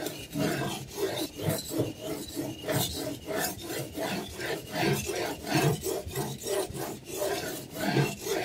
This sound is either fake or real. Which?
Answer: fake